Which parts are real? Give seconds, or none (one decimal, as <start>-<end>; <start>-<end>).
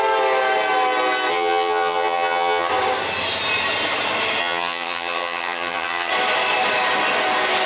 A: 0.0-1.3; 2.7-4.4; 6.1-7.7